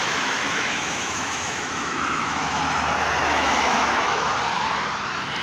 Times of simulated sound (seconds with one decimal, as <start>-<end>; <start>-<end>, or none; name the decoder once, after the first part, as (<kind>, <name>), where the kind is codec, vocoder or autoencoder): 0.0-2.6 (autoencoder, DAC-VAE); 3.2-4.4